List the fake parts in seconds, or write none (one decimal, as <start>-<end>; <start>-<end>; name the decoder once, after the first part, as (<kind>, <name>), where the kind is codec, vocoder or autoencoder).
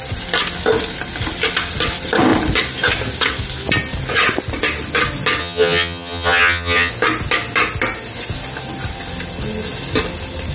5.4-6.9 (vocoder, HiFi-GAN)